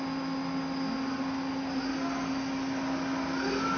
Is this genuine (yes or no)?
yes